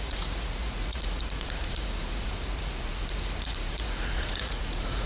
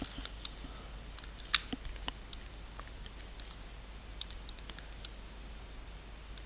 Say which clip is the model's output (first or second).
first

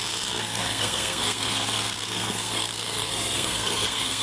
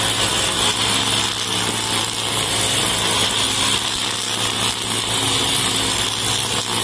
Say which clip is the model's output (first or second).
first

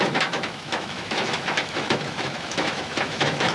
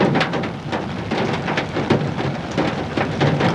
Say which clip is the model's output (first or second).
first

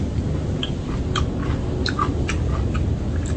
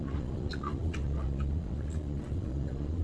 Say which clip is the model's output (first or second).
second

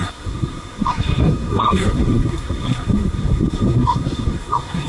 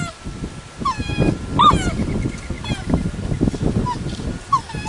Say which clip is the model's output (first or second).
first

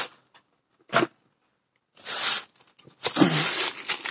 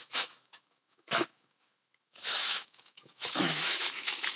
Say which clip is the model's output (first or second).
second